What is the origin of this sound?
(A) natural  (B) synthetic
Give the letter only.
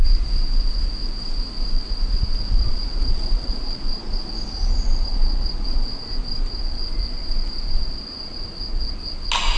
A